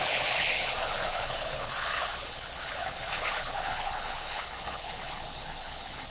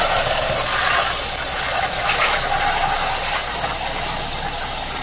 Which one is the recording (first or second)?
second